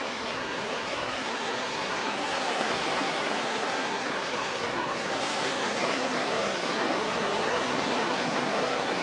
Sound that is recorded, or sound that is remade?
remade